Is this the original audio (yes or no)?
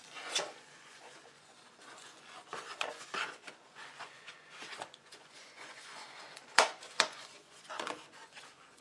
no